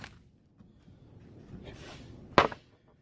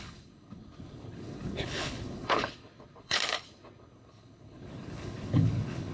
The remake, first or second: second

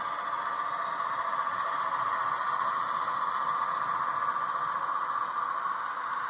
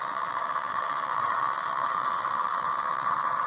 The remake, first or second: second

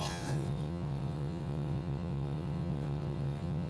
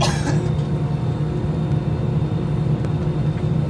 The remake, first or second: first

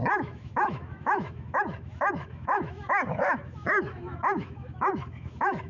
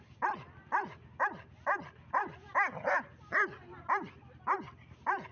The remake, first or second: first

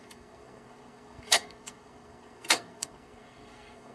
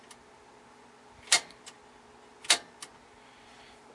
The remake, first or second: first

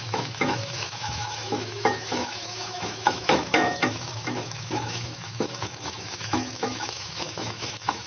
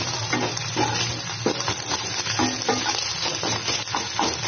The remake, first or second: first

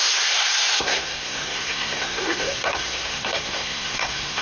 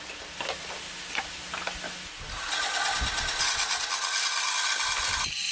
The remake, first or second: first